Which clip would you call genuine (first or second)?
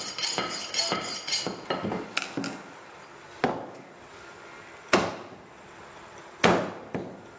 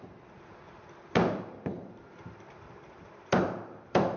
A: first